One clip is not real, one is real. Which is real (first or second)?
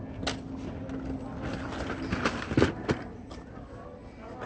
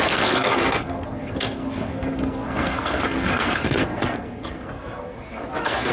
first